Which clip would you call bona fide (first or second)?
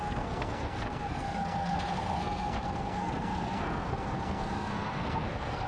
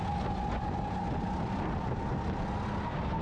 second